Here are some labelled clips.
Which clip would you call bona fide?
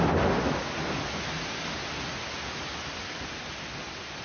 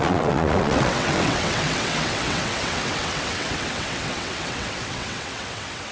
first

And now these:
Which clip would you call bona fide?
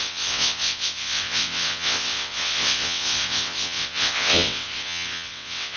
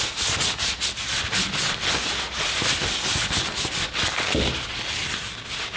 second